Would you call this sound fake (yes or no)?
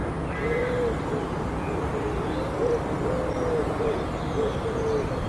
no